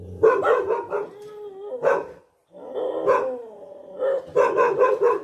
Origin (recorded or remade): recorded